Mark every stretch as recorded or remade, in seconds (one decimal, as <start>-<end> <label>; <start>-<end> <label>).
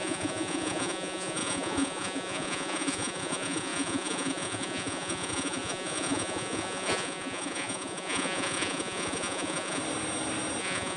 0.0-9.8 remade; 9.8-10.6 recorded; 10.6-11.0 remade